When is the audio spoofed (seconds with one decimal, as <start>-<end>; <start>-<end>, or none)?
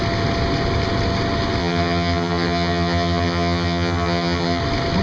1.6-4.6